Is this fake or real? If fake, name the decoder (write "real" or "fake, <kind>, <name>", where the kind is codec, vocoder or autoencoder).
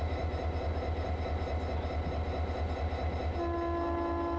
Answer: real